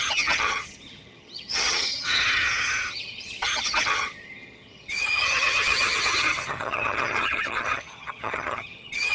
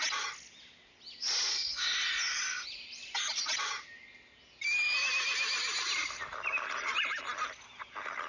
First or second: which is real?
second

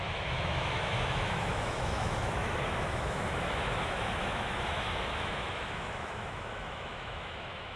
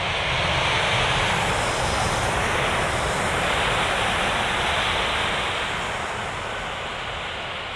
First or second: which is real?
second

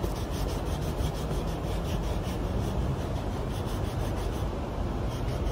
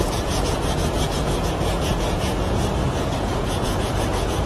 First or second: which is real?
first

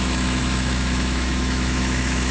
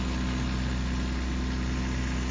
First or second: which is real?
second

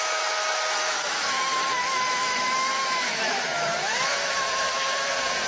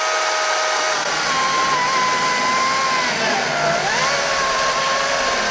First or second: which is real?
second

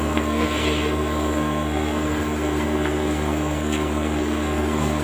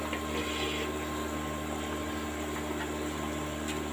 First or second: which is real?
second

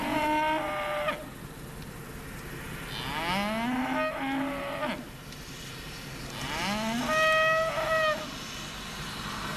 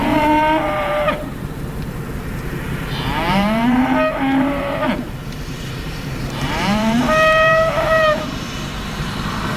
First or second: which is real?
first